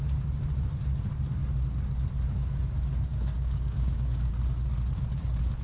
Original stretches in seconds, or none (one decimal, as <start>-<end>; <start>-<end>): 0.0-3.1; 4.3-5.6